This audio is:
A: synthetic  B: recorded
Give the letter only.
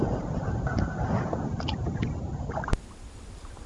B